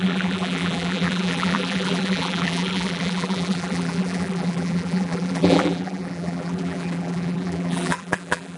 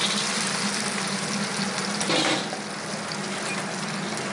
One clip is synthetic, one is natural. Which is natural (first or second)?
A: second